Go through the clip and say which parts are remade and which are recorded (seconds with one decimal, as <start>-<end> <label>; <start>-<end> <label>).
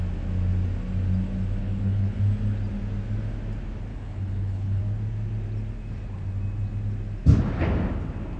0.0-1.6 recorded; 1.6-2.2 remade; 2.2-3.9 recorded; 3.9-4.8 remade; 4.8-8.4 recorded